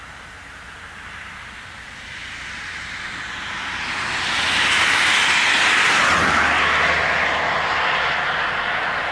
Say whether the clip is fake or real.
real